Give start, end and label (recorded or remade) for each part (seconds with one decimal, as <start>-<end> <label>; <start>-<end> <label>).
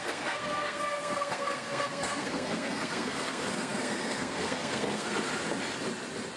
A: 0.0-5.3 remade; 5.3-6.4 recorded